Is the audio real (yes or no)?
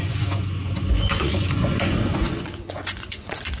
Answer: no